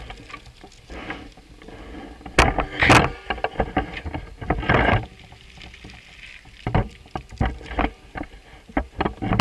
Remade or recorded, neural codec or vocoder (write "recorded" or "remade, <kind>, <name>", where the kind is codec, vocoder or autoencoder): recorded